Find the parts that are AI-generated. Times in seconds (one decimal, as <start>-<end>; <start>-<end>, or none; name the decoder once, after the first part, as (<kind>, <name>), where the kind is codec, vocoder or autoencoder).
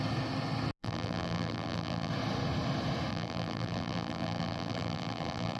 0.8-2.1 (vocoder, BigVGAN v2); 3.1-5.6